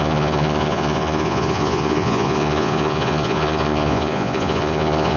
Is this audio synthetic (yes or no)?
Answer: yes